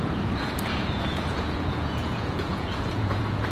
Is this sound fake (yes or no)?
yes